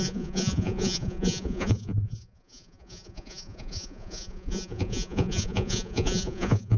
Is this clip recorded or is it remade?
remade